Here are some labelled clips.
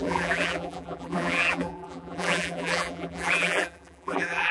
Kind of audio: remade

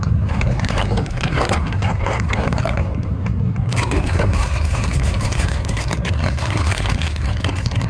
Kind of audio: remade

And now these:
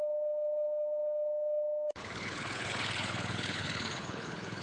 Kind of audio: remade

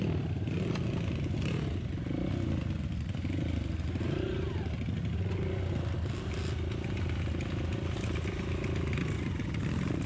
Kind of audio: recorded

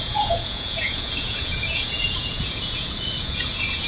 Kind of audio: remade